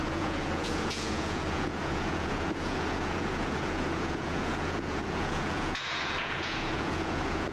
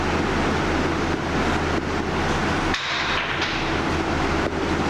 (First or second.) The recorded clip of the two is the second